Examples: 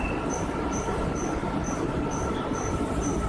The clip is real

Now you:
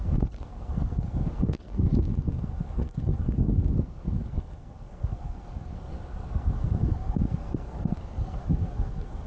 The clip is fake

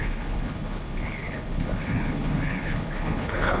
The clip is fake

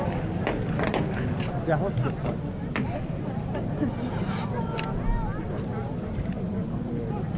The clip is real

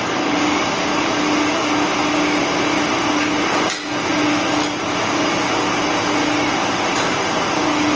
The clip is real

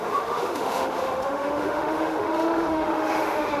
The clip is fake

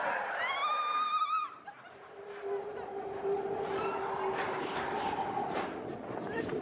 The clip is real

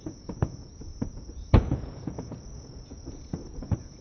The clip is fake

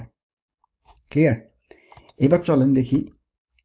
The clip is fake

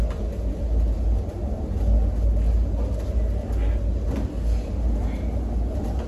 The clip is real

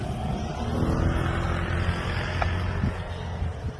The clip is real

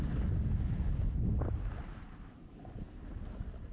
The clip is real